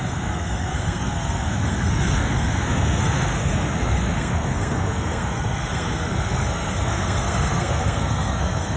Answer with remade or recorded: remade